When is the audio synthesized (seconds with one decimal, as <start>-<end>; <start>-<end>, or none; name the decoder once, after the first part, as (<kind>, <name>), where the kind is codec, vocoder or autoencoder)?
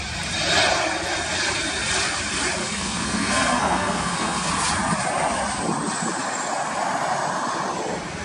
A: 2.6-4.5 (codec, SNAC)